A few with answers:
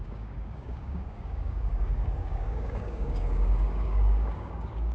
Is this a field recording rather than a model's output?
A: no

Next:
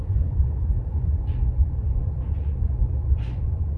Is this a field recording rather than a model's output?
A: no